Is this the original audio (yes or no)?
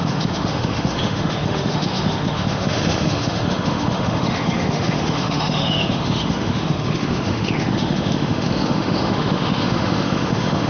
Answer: no